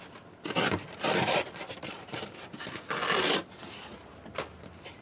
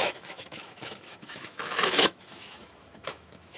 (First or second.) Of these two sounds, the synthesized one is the second